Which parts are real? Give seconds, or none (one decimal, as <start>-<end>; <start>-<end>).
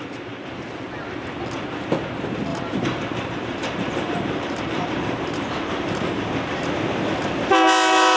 0.0-2.5; 6.7-8.2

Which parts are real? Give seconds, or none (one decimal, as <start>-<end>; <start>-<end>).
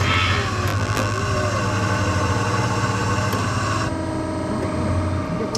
0.0-0.7; 1.2-5.6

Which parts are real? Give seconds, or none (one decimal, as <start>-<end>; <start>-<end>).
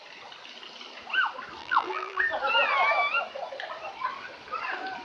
0.0-1.6; 2.2-5.0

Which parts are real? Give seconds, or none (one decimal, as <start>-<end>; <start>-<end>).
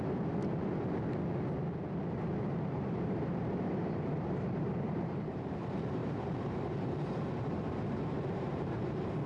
0.4-2.4